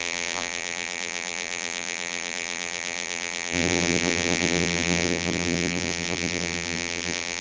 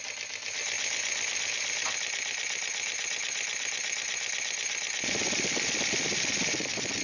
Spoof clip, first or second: first